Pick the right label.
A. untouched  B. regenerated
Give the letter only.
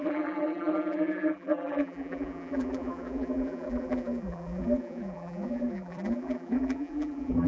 B